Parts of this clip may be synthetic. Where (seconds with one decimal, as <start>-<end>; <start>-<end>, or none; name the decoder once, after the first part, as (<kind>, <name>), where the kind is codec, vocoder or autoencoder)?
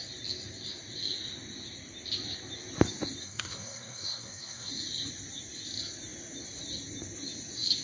3.2-4.7 (codec, SNAC)